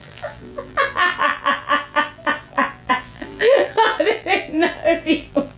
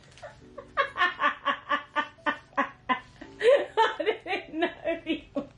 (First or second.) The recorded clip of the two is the second